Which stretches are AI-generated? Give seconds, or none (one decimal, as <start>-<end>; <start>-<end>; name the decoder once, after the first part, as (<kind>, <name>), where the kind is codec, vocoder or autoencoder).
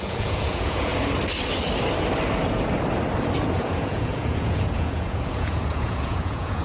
0.0-0.9 (vocoder, Vocos); 3.5-6.6